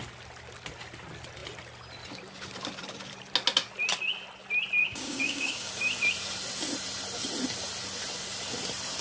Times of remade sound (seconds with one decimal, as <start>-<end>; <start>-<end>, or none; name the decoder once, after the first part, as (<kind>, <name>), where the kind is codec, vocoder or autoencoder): 4.8-5.7 (codec, DAC)